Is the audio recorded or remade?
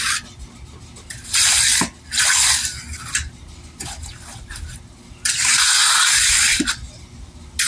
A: recorded